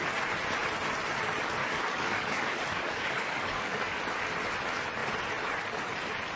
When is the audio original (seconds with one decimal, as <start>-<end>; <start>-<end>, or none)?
0.0-1.6; 4.0-6.4